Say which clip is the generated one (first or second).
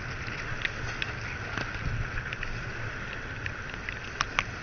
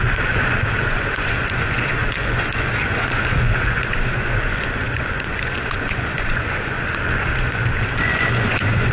second